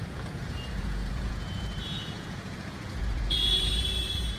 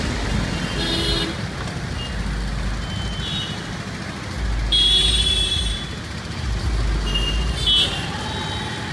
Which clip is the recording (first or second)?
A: second